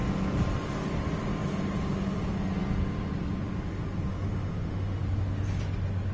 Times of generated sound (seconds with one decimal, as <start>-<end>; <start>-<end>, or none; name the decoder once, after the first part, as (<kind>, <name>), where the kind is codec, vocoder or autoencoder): 4.1-5.0 (autoencoder, DAC-VAE)